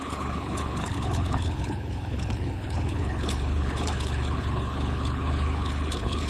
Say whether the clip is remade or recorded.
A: remade